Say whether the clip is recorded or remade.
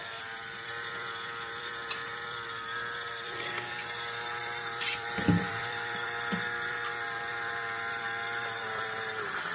remade